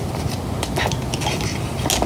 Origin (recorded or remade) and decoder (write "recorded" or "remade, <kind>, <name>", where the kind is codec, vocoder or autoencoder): recorded